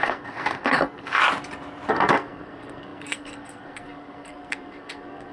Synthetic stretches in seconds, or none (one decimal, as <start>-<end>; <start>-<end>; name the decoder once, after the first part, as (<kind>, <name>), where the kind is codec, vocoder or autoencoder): 0.0-1.2 (codec, SNAC); 1.9-5.3